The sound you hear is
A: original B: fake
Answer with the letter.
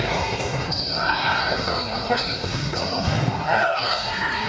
B